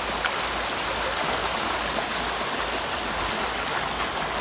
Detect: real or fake real